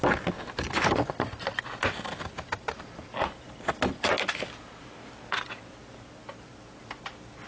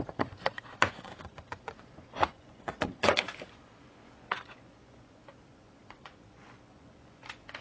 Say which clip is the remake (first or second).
second